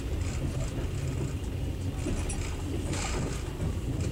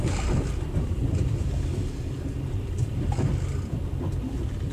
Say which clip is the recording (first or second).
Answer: first